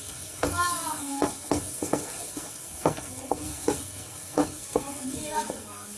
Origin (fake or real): fake